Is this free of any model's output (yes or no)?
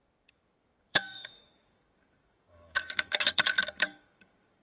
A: no